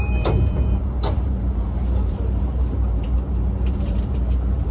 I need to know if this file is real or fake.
fake